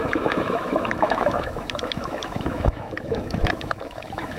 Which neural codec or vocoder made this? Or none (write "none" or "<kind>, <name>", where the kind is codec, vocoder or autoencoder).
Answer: autoencoder, DAC-VAE